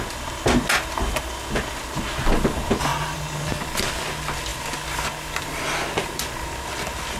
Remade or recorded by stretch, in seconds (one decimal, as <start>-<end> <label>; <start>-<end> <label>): 0.0-7.2 recorded